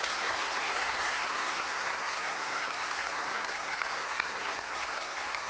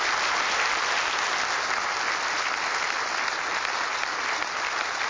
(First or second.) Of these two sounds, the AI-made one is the first